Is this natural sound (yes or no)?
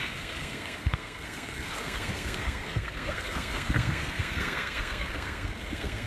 no